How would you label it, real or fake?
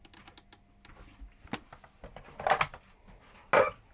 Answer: real